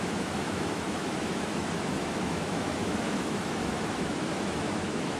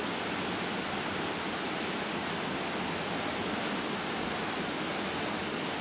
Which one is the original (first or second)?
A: second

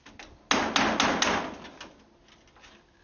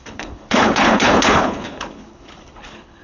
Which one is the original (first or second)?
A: first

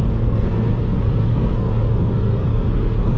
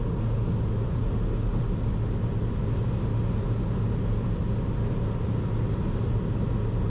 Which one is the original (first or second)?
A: second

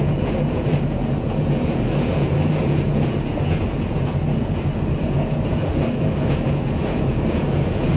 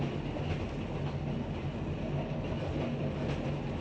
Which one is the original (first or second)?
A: second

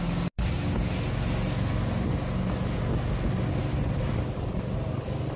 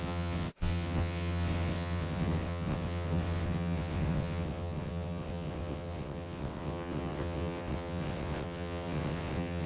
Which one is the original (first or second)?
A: first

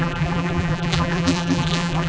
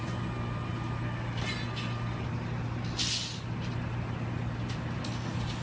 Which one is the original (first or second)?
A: second